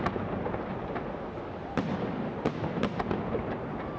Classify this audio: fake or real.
real